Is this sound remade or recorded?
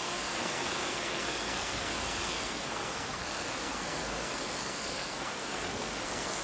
remade